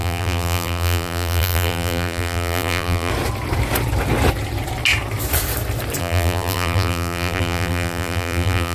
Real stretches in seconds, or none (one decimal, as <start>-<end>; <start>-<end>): 3.1-6.0